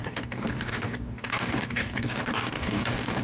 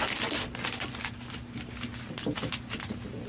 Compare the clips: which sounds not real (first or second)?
first